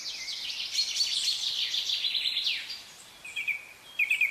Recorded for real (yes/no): yes